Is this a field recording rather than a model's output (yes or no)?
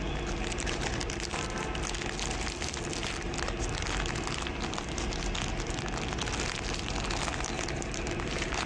yes